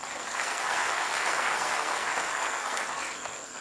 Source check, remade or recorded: remade